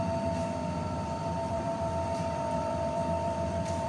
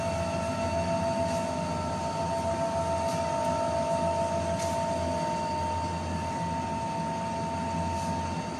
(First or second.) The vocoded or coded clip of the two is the first